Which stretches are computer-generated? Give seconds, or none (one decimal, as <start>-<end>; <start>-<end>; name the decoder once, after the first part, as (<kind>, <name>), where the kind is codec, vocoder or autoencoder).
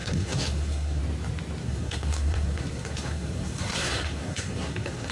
0.0-1.0 (codec, SNAC); 1.6-5.1